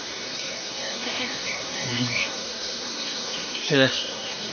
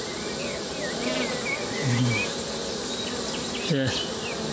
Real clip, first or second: second